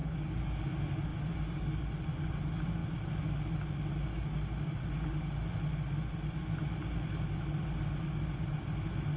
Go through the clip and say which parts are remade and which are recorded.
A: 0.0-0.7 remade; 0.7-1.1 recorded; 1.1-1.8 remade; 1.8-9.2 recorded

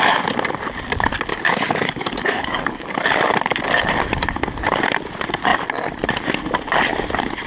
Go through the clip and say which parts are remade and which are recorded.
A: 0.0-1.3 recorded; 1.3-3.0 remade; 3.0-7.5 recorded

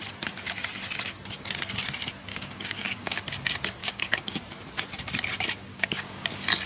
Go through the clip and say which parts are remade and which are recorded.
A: 0.0-2.3 recorded; 2.3-3.2 remade; 3.2-3.8 recorded; 3.8-4.4 remade; 4.4-5.7 recorded; 5.7-6.3 remade; 6.3-6.7 recorded